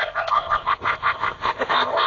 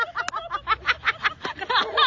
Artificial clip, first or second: first